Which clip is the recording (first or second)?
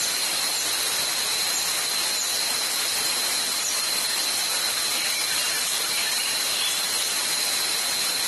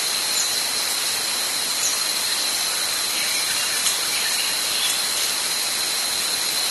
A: first